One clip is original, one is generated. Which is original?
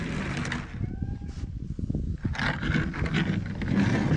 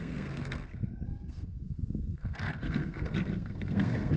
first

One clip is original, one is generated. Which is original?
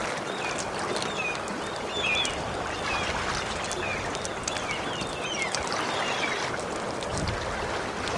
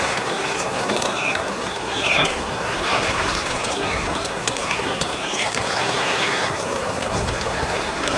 first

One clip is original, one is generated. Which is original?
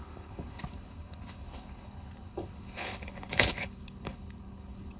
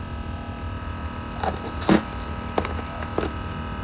second